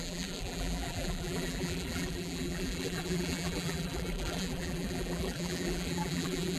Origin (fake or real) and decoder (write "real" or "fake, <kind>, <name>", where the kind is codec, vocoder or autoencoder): fake, vocoder, BigVGAN v2